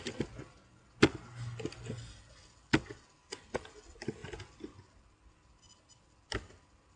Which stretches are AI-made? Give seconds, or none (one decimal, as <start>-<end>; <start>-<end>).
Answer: none